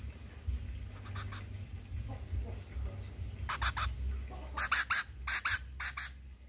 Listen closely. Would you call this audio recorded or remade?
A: recorded